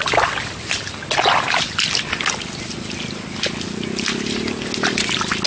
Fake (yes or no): no